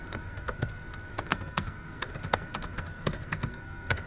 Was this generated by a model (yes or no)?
yes